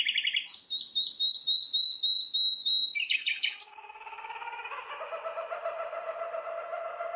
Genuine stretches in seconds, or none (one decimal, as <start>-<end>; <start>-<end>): 0.0-2.6; 4.8-7.2